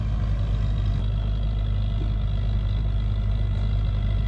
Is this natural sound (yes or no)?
yes